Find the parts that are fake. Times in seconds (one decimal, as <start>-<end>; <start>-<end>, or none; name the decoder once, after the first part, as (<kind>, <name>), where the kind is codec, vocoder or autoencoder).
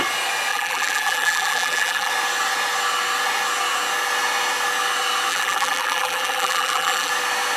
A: 0.5-2.1 (vocoder, BigVGAN v2); 5.3-7.1